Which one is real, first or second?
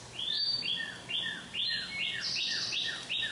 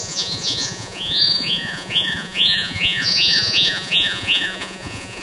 first